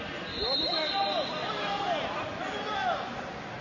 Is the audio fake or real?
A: real